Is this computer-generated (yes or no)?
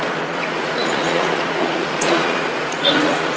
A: yes